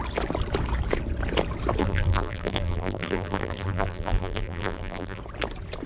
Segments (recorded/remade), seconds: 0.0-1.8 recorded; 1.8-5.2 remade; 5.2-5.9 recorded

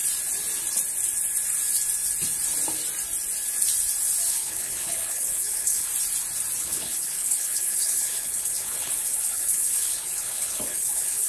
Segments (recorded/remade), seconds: 0.0-4.3 recorded; 4.3-5.9 remade; 5.9-6.6 recorded; 6.6-11.3 remade

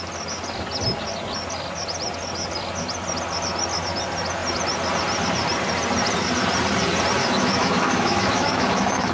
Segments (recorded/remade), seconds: 0.0-7.2 recorded; 7.2-9.1 remade

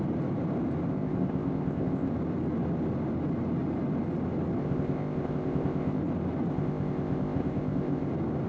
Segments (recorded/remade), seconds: 0.0-0.9 recorded; 0.9-2.1 remade; 2.1-4.6 recorded; 4.6-6.0 remade; 6.0-6.5 recorded; 6.5-8.1 remade; 8.1-8.5 recorded

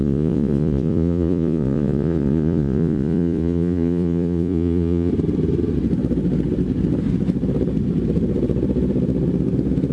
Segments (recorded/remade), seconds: 0.0-5.1 remade; 5.1-9.9 recorded

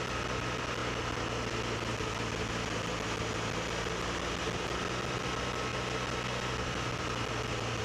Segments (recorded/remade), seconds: 0.0-7.8 recorded

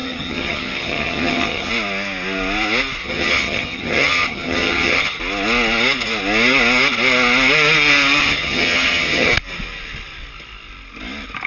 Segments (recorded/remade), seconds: 0.0-1.7 remade; 1.7-3.0 recorded; 3.0-5.2 remade; 5.2-8.2 recorded; 8.2-9.3 remade; 9.3-11.5 recorded